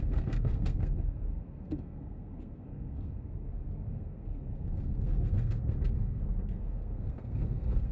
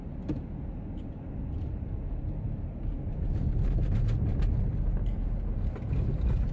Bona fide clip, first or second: second